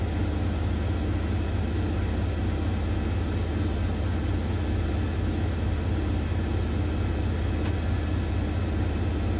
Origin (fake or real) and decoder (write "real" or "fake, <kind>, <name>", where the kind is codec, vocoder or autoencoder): real